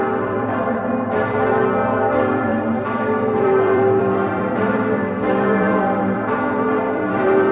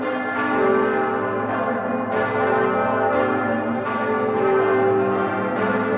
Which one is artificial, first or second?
first